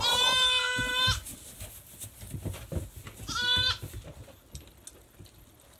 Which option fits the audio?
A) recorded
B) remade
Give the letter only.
A